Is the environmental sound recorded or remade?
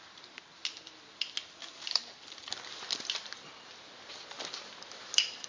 recorded